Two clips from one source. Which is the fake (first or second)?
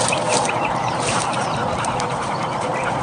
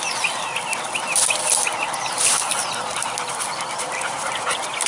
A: first